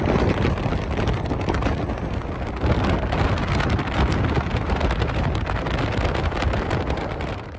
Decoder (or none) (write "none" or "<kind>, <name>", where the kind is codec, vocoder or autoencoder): none